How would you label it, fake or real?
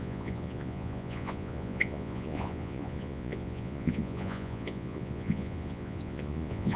fake